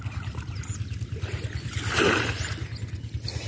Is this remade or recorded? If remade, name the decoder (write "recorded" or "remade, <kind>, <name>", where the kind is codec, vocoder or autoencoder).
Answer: recorded